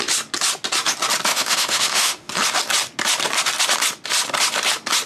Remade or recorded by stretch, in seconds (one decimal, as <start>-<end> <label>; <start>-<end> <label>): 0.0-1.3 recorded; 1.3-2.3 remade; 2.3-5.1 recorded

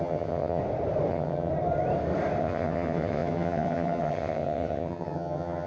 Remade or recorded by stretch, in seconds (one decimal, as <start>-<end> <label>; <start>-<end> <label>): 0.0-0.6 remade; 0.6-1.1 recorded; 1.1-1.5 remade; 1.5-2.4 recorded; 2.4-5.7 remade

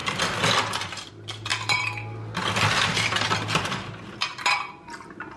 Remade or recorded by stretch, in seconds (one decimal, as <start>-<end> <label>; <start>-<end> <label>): 0.0-5.4 recorded

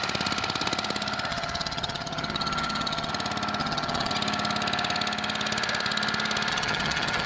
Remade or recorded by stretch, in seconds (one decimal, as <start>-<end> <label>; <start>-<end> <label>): 0.0-1.3 recorded; 1.3-3.1 remade; 3.1-3.6 recorded; 3.6-4.1 remade; 4.1-6.5 recorded; 6.5-7.3 remade

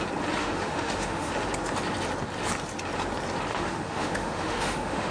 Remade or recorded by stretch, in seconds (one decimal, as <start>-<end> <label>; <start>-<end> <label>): 0.0-0.4 recorded; 0.4-1.3 remade; 1.3-3.5 recorded; 3.5-5.1 remade